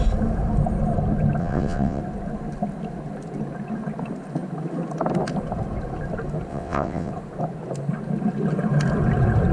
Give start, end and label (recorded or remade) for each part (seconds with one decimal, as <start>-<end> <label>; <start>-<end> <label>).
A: 0.0-1.4 recorded; 1.4-2.0 remade; 2.0-6.5 recorded; 6.5-7.1 remade; 7.1-9.5 recorded